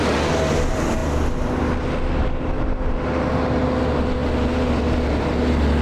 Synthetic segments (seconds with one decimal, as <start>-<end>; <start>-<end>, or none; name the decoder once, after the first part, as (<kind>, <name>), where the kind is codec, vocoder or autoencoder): none